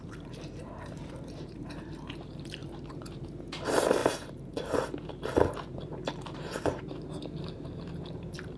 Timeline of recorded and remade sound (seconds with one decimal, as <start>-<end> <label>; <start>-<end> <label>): 0.0-8.6 remade